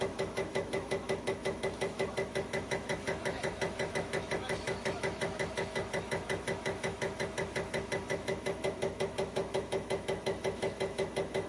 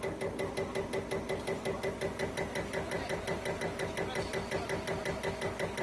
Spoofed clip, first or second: first